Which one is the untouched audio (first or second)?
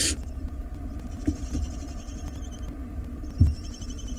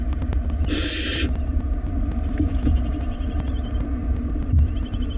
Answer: second